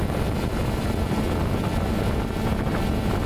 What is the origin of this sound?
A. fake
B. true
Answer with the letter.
B